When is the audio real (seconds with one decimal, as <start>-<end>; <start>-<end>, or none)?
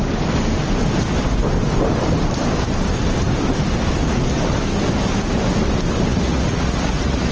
0.0-6.1